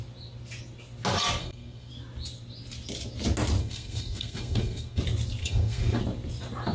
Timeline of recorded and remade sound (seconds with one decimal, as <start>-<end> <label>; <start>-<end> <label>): 0.0-1.4 recorded; 1.4-1.9 remade; 1.9-3.6 recorded; 3.6-5.0 remade; 5.0-5.4 recorded; 5.4-6.0 remade; 6.0-6.7 recorded